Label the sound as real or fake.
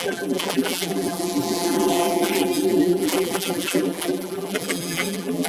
fake